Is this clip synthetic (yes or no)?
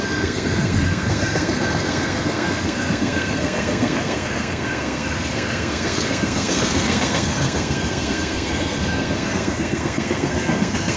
yes